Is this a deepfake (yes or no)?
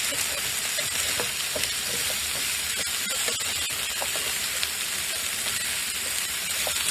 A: no